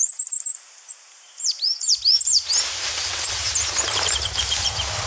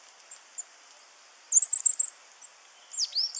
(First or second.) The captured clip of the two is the second